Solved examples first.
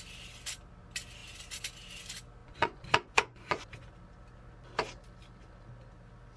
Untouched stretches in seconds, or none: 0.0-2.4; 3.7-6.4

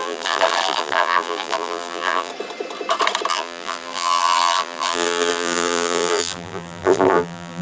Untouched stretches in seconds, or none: 2.3-3.3

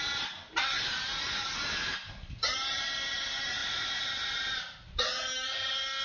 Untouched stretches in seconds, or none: 0.0-3.6; 5.2-6.0

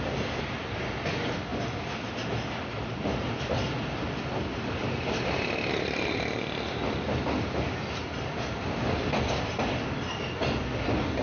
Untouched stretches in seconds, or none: 0.0-4.5; 5.7-11.2